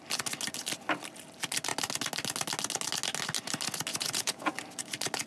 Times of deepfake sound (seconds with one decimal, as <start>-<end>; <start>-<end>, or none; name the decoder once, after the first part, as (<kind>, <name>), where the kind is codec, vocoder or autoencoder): 3.9-4.5 (vocoder, Vocos)